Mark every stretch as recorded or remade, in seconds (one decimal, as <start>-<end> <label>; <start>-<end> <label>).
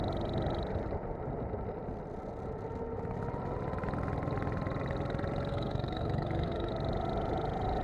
0.0-5.5 recorded; 5.5-6.7 remade; 6.7-7.8 recorded